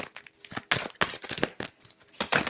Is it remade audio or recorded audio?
recorded